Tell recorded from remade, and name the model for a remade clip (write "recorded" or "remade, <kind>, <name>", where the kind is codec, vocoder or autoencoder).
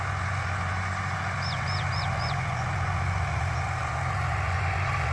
remade, vocoder, Vocos